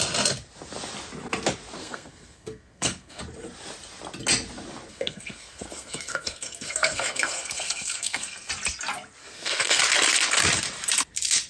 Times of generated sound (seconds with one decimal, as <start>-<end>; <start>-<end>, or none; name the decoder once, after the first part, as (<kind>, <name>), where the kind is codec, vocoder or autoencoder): 1.8-3.2 (codec, SNAC); 4.9-8.5; 9.2-9.8